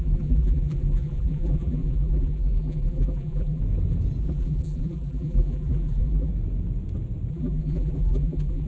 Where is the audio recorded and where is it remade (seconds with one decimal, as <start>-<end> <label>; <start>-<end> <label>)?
0.0-3.6 remade; 3.6-4.2 recorded; 4.2-6.3 remade; 6.3-7.3 recorded; 7.3-8.7 remade